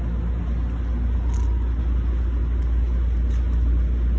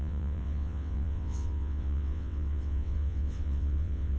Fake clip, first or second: second